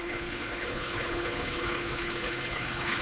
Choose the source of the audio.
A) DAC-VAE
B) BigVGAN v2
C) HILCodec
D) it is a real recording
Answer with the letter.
C